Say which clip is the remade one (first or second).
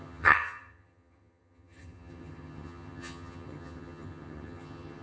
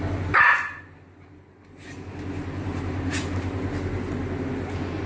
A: first